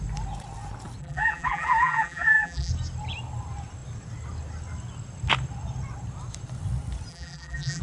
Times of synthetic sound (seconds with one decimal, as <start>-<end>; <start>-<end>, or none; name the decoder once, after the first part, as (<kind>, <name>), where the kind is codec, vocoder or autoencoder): 1.0-2.7 (vocoder, BigVGAN v2); 7.1-7.8